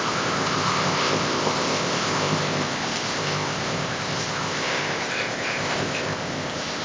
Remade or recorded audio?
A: remade